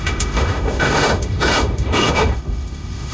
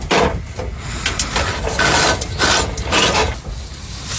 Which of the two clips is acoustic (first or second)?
second